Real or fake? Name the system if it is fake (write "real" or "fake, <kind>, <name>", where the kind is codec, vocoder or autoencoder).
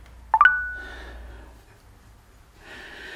real